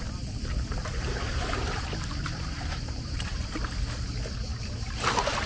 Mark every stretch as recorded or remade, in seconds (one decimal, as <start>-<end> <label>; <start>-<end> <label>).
0.0-0.4 recorded; 0.4-3.7 remade; 3.7-4.5 recorded; 4.5-5.5 remade